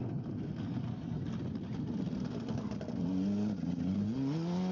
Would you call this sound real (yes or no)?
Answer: yes